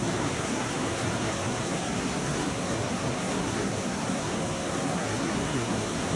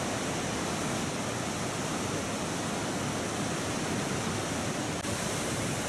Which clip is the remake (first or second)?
first